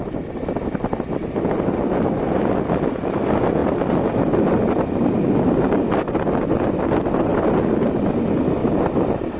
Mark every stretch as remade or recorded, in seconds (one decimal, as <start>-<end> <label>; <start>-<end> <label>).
0.0-8.6 recorded; 8.6-9.4 remade